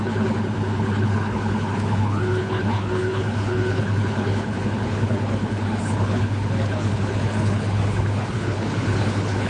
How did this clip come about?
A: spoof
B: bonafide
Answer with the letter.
A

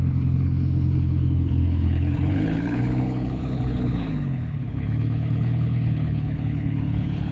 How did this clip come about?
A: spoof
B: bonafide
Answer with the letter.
A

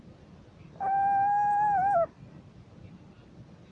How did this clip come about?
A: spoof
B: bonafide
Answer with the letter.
B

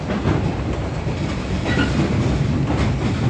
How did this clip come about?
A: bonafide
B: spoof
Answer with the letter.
A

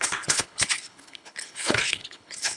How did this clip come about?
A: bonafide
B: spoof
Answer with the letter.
B